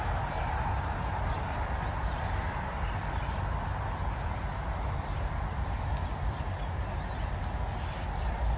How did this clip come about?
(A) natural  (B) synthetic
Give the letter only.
A